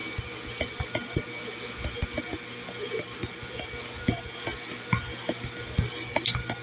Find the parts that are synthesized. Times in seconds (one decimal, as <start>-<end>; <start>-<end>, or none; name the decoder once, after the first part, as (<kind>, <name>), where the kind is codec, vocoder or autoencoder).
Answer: none